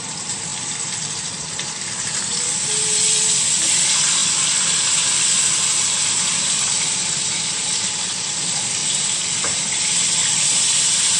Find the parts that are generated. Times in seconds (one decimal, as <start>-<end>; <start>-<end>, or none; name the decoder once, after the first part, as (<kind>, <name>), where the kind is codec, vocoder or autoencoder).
0.0-4.2 (vocoder, BigVGAN v2); 7.1-8.8; 10.4-11.2